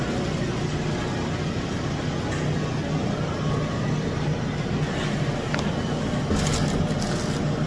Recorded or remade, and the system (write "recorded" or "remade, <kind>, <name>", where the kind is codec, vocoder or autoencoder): recorded